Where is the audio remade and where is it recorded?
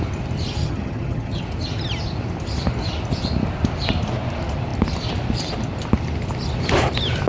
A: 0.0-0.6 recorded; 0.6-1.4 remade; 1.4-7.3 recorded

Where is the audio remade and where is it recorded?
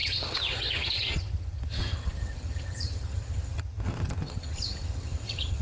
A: 0.0-5.6 remade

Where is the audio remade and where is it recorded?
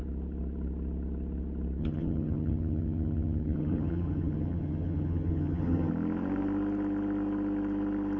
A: 0.0-1.8 recorded; 1.8-5.9 remade; 5.9-8.2 recorded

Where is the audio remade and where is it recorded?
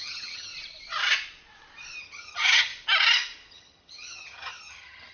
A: 0.0-0.5 remade; 0.5-2.0 recorded; 2.0-2.7 remade; 2.7-3.5 recorded; 3.5-5.1 remade